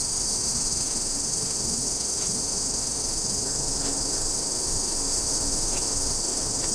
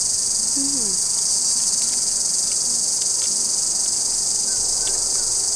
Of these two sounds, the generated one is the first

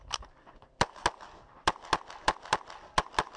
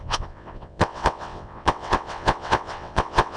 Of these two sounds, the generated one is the second